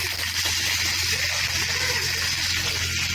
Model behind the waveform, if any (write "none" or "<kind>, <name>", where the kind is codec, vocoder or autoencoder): none